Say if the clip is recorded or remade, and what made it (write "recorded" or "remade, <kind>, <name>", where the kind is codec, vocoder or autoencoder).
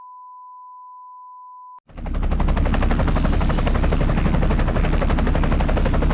recorded